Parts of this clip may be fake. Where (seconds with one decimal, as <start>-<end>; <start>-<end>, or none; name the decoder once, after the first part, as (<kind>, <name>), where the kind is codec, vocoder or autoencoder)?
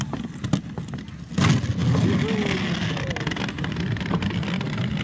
none